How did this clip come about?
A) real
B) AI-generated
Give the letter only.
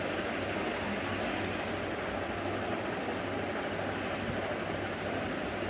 A